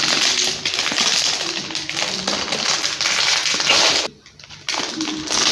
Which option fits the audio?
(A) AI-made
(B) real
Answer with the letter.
B